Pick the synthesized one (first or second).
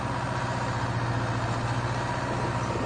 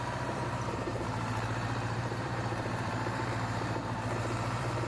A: second